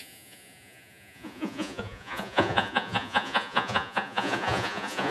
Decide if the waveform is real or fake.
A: fake